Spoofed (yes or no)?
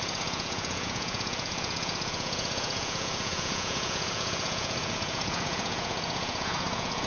yes